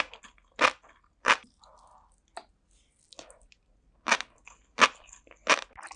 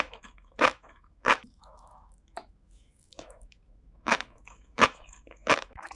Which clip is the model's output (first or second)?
second